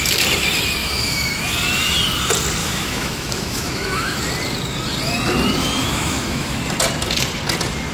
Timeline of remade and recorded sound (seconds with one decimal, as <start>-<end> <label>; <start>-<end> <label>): 0.0-0.8 recorded; 0.8-1.4 remade; 1.4-2.6 recorded; 2.6-4.2 remade; 4.2-5.8 recorded; 5.8-6.6 remade; 6.6-7.9 recorded